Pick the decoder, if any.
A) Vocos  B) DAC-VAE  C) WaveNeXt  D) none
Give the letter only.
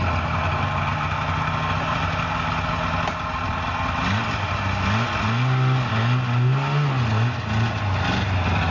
D